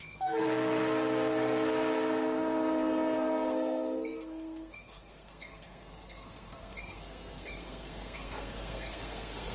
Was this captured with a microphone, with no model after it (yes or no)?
no